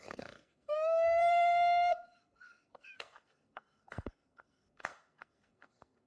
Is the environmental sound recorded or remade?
remade